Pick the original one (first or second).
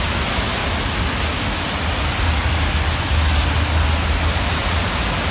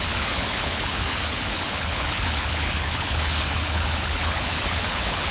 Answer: first